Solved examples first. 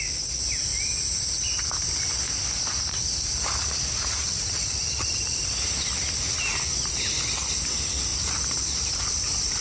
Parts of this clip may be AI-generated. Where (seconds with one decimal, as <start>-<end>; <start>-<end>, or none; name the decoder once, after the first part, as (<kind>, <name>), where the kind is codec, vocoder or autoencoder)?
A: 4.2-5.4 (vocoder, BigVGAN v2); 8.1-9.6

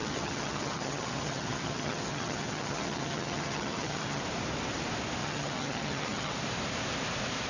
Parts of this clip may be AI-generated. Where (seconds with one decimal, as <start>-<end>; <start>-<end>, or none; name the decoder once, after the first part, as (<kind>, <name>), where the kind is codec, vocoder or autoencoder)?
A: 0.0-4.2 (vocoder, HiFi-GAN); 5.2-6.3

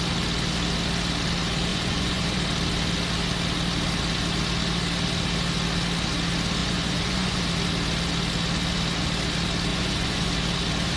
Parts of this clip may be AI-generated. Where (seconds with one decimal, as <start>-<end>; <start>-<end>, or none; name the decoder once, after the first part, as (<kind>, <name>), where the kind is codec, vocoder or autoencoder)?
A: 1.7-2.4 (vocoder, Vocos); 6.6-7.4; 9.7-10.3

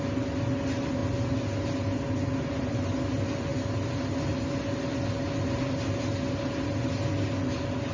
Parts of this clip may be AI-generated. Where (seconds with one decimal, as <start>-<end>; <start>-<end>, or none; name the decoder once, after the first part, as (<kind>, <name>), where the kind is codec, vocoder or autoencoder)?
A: none